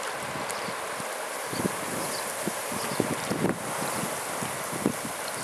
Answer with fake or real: real